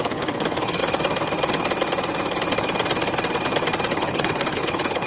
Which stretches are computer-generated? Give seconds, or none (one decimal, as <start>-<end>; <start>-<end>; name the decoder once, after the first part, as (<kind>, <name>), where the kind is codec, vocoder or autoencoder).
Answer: 0.0-0.8 (codec, HILCodec); 3.9-5.1